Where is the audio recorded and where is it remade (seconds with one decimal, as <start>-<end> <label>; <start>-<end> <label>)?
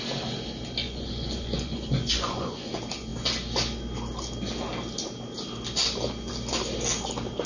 0.0-0.8 recorded; 0.8-2.7 remade; 2.7-7.5 recorded